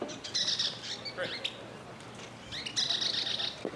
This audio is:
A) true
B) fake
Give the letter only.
A